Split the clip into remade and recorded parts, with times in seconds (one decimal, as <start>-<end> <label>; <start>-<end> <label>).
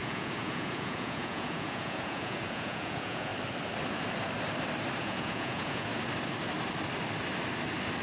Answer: 0.0-3.3 remade; 3.3-5.0 recorded; 5.0-5.9 remade; 5.9-8.0 recorded